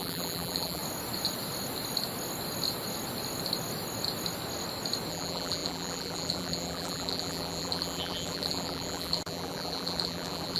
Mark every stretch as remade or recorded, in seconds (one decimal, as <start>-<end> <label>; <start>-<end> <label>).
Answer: 0.0-0.8 remade; 0.8-5.1 recorded; 5.1-10.6 remade